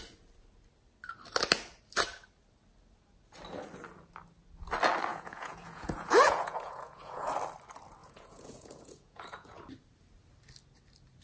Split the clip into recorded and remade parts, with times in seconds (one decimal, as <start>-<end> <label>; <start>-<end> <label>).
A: 0.0-5.1 recorded; 5.1-7.3 remade; 7.3-8.0 recorded; 8.0-9.6 remade; 9.6-11.2 recorded